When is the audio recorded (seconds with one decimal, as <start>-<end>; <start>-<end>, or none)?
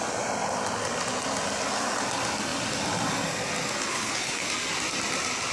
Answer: 0.0-3.9; 4.5-5.5